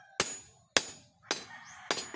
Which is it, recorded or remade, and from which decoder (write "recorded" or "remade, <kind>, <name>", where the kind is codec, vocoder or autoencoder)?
recorded